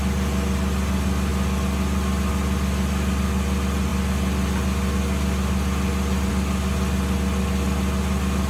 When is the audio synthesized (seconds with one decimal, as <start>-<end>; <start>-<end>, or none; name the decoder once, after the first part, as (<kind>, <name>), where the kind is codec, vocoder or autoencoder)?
none